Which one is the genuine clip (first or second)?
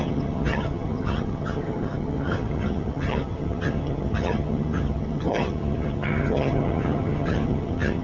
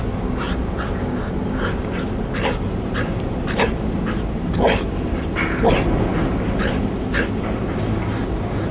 second